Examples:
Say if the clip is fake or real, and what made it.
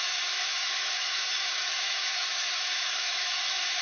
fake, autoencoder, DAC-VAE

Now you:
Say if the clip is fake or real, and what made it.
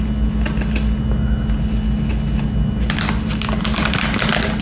real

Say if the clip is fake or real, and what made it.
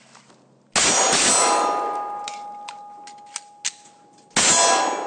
real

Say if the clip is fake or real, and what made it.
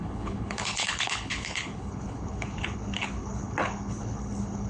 fake, codec, HILCodec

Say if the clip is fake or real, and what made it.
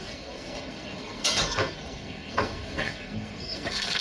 fake, codec, SNAC